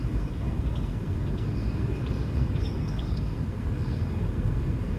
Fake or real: fake